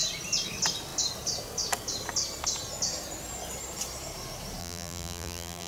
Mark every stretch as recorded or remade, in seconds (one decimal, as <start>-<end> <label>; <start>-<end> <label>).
0.0-4.6 recorded; 4.6-5.7 remade